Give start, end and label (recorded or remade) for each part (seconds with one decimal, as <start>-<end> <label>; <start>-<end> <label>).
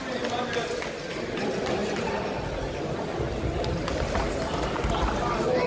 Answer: 0.0-5.7 recorded